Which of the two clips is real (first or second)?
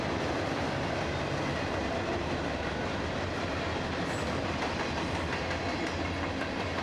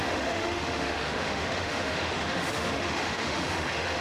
first